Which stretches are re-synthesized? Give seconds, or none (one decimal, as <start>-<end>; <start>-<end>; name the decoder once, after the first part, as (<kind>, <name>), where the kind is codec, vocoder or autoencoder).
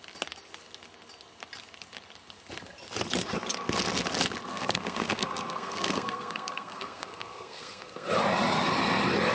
4.5-8.1 (codec, SNAC)